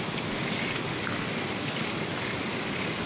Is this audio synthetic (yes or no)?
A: no